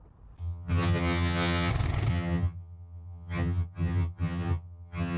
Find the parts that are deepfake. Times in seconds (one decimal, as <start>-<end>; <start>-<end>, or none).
0.4-1.7; 2.1-5.2